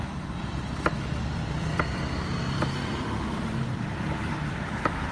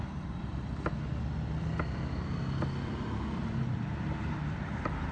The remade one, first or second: first